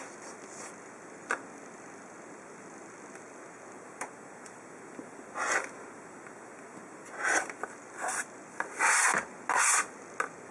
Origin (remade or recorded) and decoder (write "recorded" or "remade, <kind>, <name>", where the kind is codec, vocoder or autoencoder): recorded